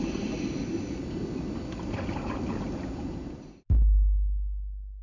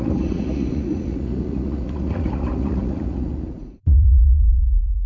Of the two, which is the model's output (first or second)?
second